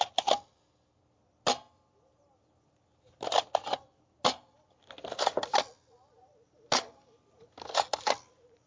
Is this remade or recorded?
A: recorded